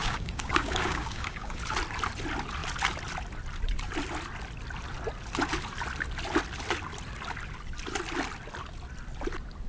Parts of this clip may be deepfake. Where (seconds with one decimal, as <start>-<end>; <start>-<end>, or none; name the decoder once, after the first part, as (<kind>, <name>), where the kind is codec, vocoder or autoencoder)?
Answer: 0.0-1.6 (codec, DAC)